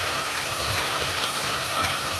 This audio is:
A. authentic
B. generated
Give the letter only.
B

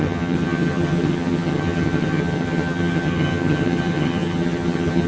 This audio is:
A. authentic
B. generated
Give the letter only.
B